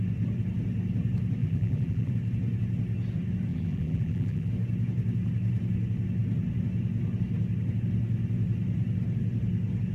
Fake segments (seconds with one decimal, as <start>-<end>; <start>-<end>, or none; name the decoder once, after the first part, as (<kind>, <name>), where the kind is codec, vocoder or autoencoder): 1.4-2.1 (vocoder, BigVGAN v2); 3.5-4.5